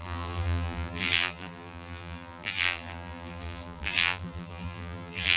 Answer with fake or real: fake